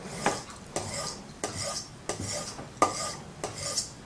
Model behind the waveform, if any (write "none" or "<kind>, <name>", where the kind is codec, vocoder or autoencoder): none